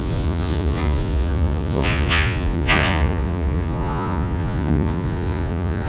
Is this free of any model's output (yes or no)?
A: no